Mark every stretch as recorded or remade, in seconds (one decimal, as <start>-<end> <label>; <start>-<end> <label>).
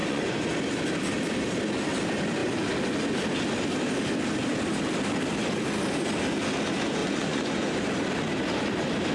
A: 0.0-0.5 remade; 0.5-7.0 recorded; 7.0-7.7 remade; 7.7-9.1 recorded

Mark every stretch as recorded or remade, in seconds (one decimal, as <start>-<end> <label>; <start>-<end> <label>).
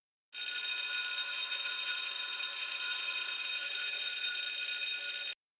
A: 0.0-1.2 recorded; 1.2-4.4 remade; 4.4-5.6 recorded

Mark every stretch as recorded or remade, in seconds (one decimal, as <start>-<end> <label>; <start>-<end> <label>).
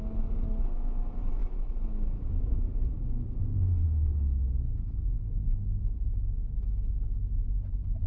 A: 0.0-3.2 recorded; 3.2-6.1 remade; 6.1-8.1 recorded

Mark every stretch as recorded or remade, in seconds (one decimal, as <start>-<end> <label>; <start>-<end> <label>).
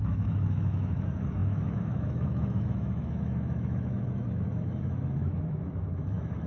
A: 0.0-6.5 remade